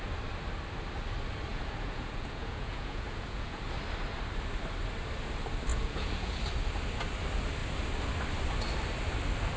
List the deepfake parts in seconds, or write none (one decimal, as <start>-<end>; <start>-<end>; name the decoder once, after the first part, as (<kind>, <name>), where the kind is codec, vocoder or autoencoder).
1.5-3.6 (vocoder, Vocos); 5.7-6.4